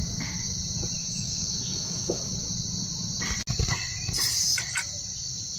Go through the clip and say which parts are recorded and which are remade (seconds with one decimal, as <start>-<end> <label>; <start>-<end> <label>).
0.0-1.0 recorded; 1.0-2.2 remade; 2.2-5.6 recorded